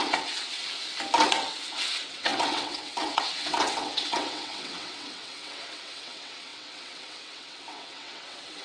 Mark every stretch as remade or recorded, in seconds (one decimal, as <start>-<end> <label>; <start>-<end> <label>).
0.0-0.6 remade; 0.6-1.2 recorded; 1.2-8.6 remade